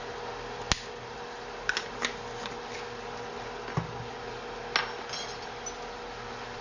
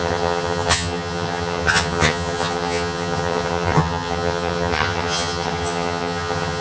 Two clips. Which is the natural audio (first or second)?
first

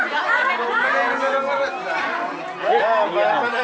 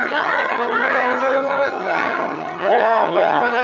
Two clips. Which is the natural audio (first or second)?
first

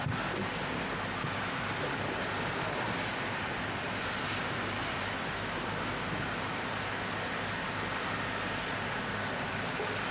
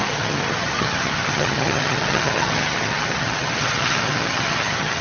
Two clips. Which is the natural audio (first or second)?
first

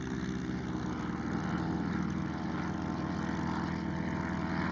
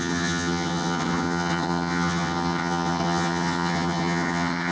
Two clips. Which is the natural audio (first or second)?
first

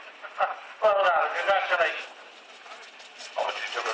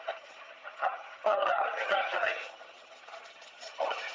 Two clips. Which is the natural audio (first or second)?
first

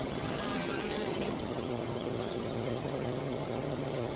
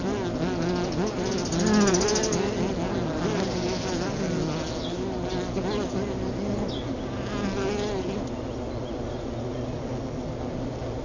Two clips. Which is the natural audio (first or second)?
second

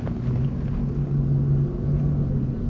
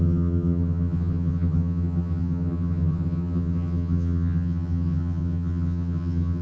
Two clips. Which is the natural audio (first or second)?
first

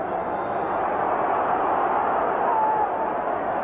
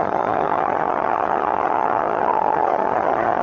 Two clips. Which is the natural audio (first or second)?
first